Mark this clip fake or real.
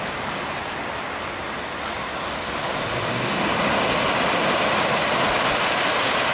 real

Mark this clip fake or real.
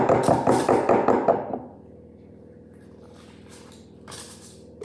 real